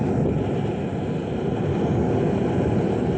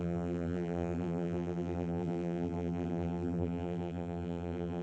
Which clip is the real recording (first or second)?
first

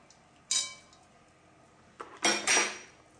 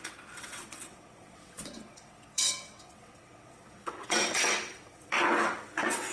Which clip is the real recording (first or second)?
first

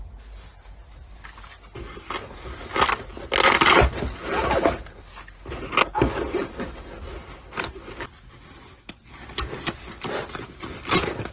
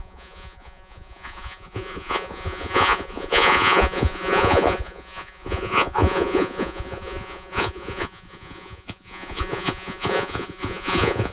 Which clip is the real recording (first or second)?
first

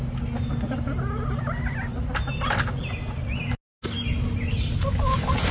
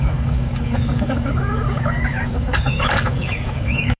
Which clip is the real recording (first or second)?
first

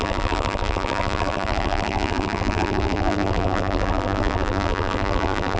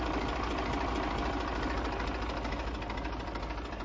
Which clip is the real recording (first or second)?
second